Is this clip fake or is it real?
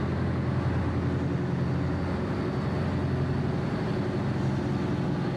real